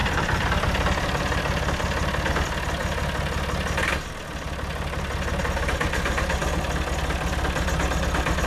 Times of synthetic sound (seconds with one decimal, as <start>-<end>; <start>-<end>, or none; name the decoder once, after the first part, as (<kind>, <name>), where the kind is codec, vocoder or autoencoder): 0.0-1.4 (vocoder, BigVGAN v2)